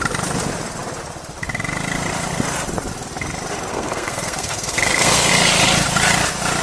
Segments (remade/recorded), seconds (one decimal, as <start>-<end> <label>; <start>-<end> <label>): 0.0-3.7 recorded; 3.7-5.3 remade; 5.3-6.6 recorded